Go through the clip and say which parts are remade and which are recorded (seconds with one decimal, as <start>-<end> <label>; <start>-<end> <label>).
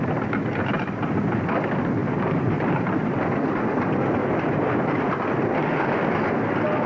0.0-2.0 recorded; 2.0-3.1 remade; 3.1-4.2 recorded; 4.2-5.1 remade; 5.1-6.9 recorded